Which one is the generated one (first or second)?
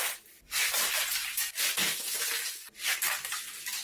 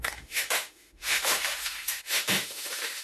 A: second